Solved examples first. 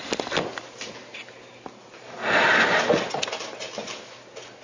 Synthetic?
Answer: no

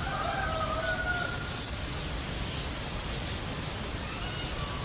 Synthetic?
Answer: no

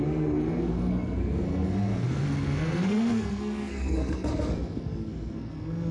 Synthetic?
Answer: yes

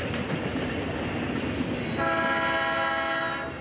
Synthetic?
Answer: no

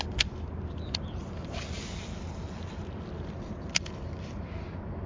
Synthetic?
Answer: no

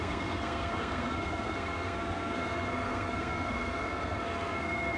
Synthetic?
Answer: yes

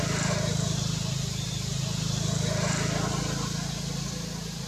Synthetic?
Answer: no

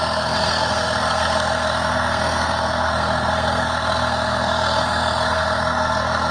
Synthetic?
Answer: yes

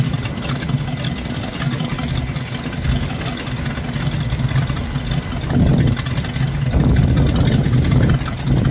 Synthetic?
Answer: no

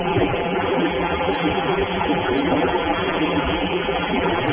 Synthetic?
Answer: yes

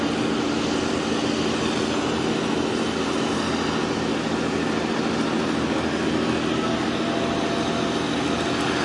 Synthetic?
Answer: no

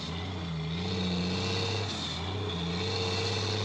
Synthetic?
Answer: no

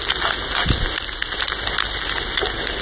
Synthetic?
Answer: no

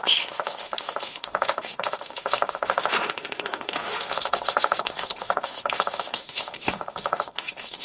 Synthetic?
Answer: yes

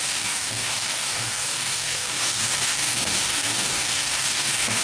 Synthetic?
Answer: yes